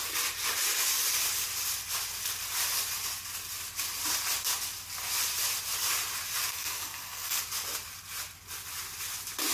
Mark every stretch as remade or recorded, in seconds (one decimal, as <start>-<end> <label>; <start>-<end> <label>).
0.0-6.5 recorded; 6.5-7.4 remade; 7.4-9.5 recorded